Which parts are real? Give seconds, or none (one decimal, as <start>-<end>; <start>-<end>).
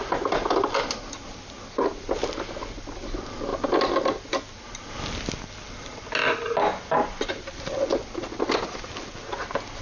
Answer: 0.0-9.8